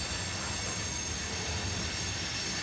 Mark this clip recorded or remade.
recorded